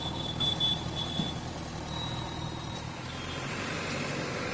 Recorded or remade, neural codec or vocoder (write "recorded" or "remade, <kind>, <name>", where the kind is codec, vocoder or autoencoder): recorded